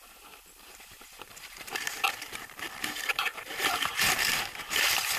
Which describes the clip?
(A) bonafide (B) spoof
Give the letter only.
B